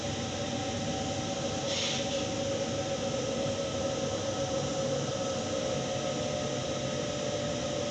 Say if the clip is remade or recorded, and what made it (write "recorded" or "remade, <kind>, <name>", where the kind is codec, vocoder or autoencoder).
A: recorded